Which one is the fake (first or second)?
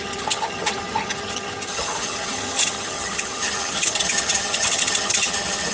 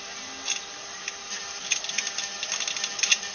first